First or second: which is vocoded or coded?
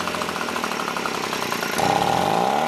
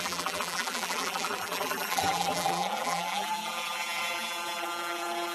second